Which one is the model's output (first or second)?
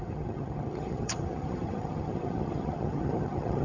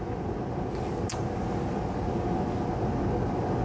first